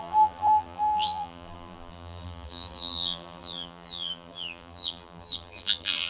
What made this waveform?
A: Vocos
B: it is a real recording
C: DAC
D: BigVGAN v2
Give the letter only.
D